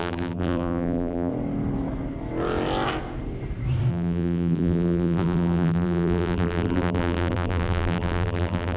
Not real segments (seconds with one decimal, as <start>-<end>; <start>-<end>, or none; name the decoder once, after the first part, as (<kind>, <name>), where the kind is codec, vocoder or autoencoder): 0.0-1.3 (vocoder, BigVGAN v2); 3.9-8.8